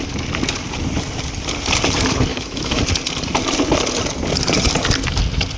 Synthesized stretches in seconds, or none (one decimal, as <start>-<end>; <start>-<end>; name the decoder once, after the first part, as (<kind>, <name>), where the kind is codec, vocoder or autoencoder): 2.3-2.8 (autoencoder, DAC-VAE)